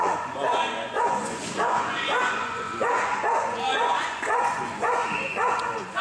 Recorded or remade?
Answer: remade